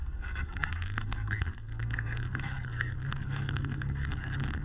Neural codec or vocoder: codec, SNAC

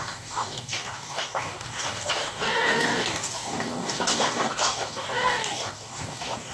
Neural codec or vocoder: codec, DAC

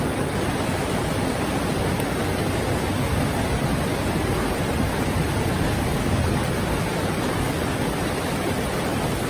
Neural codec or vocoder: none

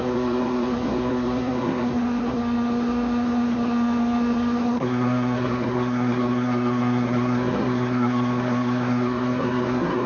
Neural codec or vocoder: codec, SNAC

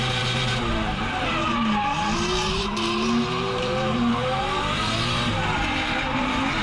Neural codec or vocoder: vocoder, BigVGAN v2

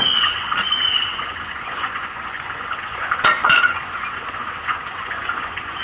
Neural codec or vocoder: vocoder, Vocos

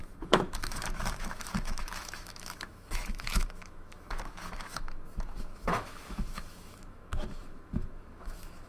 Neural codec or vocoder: autoencoder, DAC-VAE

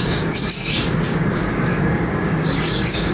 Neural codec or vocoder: codec, DAC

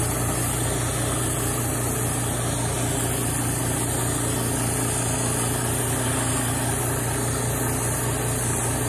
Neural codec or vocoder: none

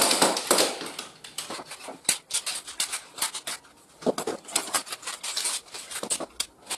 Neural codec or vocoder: none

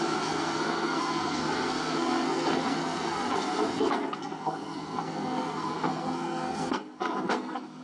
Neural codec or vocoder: codec, SNAC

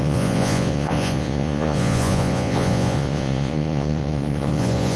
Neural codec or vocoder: vocoder, Vocos